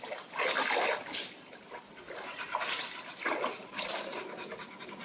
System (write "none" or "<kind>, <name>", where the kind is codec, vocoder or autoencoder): none